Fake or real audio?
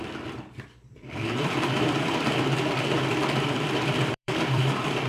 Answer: fake